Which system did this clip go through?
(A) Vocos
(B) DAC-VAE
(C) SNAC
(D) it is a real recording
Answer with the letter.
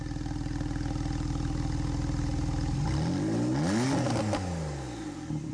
D